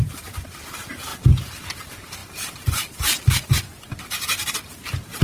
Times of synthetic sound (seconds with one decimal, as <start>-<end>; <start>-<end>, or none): 0.0-1.1; 1.6-5.2